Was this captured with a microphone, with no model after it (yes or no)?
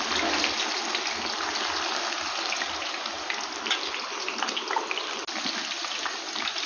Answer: yes